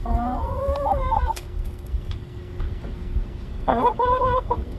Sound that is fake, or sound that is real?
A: fake